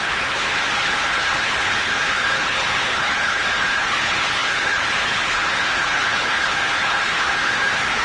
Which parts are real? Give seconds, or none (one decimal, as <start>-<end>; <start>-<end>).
none